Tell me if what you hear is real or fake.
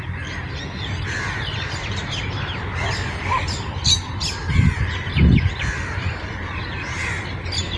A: real